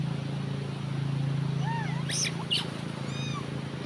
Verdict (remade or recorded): recorded